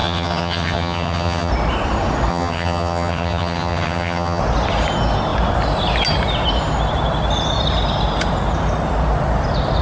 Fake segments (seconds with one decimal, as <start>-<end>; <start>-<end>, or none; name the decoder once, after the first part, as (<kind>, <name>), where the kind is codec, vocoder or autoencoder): 0.0-1.5 (vocoder, HiFi-GAN); 2.3-4.4